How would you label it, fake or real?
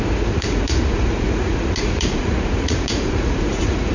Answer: fake